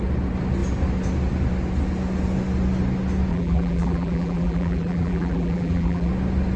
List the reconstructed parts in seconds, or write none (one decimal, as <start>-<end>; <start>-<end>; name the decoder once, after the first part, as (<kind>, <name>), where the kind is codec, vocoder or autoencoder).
3.3-6.1 (vocoder, BigVGAN v2)